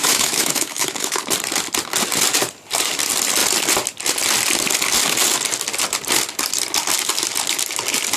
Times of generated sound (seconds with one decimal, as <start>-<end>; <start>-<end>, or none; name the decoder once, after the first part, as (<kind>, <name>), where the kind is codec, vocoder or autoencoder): 0.0-1.2 (autoencoder, DAC-VAE)